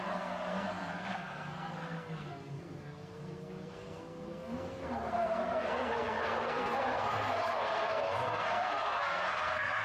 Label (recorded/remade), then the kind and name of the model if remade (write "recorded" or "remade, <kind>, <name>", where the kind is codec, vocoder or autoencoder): remade, codec, SNAC